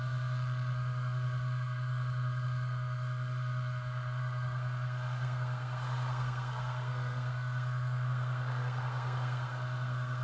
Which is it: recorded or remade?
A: remade